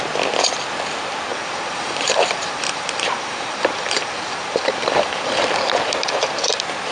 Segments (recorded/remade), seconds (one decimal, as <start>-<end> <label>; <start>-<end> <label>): 0.0-1.3 recorded; 1.3-5.4 remade; 5.4-6.9 recorded